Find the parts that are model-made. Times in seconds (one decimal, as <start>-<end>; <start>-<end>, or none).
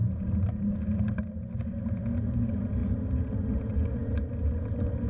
none